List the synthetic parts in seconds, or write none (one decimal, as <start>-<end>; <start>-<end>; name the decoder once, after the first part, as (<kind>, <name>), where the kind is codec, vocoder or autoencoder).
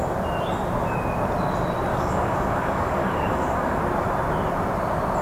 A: 1.9-3.8 (codec, DAC)